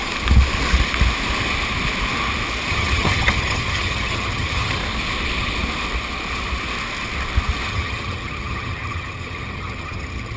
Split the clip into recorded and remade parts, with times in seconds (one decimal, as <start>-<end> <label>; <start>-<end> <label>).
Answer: 0.0-2.7 recorded; 2.7-4.8 remade; 4.8-7.7 recorded; 7.7-10.4 remade